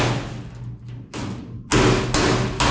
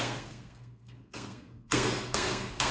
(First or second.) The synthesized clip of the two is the second